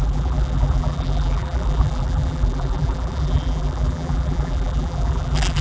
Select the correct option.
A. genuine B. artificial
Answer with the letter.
B